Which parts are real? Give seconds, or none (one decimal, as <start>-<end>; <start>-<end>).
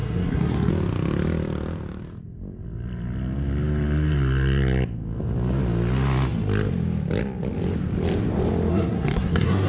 0.7-8.7